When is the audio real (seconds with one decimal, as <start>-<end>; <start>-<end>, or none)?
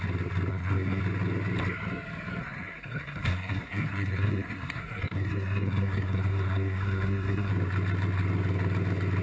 0.0-0.5; 1.0-2.4; 7.5-9.2